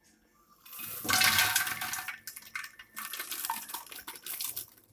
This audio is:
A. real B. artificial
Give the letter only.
A